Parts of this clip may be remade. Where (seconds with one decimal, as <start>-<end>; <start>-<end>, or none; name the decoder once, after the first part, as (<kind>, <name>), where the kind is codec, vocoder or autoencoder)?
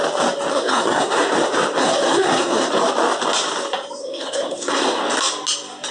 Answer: 0.5-1.3 (codec, SNAC); 1.8-2.7; 4.0-5.0